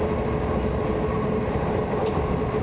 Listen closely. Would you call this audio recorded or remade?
recorded